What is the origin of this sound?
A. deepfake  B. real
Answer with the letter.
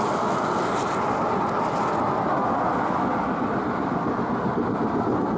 B